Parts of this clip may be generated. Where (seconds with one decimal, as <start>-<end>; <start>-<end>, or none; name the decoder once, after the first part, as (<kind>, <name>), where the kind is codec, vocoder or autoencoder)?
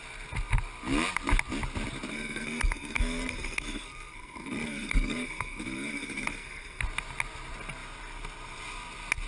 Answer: 2.1-6.8 (codec, SNAC)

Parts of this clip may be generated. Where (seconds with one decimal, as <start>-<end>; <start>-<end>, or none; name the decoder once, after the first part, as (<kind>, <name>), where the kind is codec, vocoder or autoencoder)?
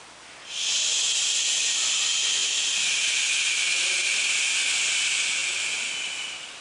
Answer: none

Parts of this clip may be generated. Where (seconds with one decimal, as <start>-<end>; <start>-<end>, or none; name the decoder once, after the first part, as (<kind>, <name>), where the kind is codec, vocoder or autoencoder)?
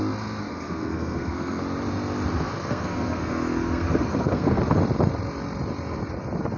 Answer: 0.4-1.6 (codec, SNAC); 2.6-4.6